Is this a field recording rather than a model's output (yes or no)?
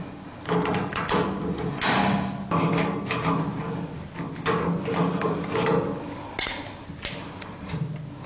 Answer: yes